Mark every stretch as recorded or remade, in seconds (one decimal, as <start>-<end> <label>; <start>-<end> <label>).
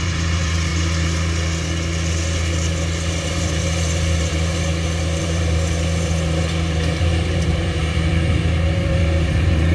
0.0-0.7 remade; 0.7-3.2 recorded; 3.2-4.7 remade; 4.7-5.2 recorded; 5.2-8.1 remade; 8.1-8.7 recorded; 8.7-9.7 remade